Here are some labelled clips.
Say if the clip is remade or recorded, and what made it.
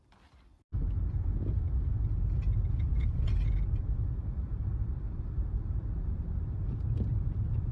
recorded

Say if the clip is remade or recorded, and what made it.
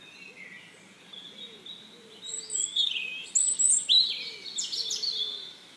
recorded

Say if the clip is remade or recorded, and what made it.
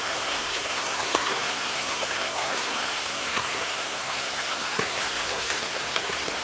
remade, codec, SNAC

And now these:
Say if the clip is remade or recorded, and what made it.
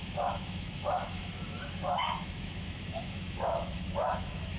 remade, autoencoder, DAC-VAE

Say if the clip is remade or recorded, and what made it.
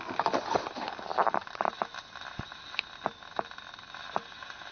recorded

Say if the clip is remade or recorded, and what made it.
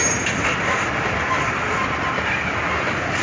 recorded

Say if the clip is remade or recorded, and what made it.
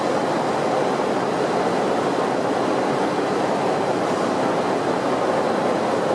recorded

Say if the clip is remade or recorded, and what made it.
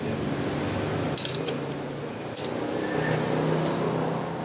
recorded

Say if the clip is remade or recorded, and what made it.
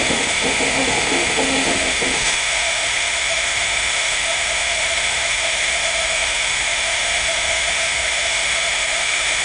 remade, autoencoder, DAC-VAE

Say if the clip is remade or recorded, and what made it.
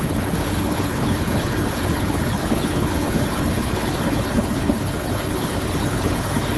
remade, codec, HILCodec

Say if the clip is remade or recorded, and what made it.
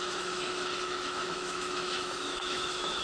remade, autoencoder, DAC-VAE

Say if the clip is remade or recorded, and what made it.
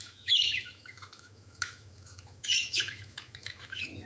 remade, autoencoder, DAC-VAE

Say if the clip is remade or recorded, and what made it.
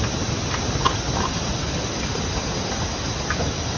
recorded